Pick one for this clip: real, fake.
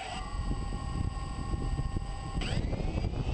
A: real